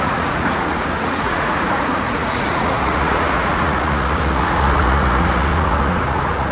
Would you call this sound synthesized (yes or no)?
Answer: yes